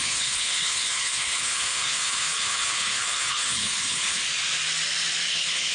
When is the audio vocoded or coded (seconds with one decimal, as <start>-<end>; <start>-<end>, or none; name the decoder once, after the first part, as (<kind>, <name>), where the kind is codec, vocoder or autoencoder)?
0.0-4.2 (codec, HILCodec); 5.3-5.7